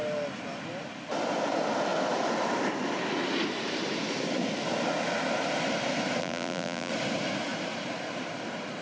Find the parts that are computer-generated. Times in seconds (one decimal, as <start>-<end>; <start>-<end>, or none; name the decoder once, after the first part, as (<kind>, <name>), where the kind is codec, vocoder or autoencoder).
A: 6.2-6.9 (vocoder, BigVGAN v2)